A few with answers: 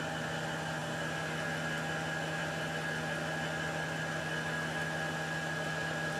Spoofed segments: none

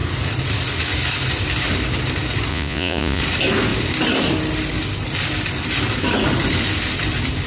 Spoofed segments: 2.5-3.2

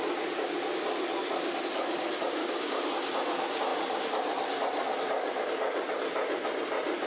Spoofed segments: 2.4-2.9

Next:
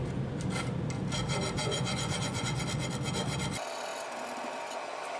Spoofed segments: 1.6-2.6

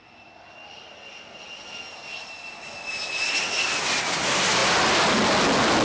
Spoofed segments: none